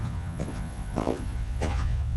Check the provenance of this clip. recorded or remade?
remade